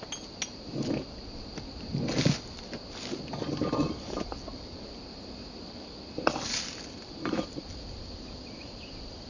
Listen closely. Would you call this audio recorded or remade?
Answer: recorded